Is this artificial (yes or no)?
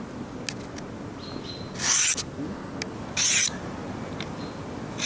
no